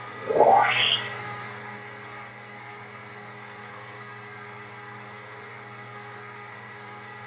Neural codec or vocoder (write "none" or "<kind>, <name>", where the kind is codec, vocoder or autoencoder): codec, SNAC